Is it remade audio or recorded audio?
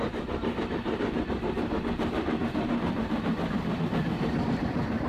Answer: remade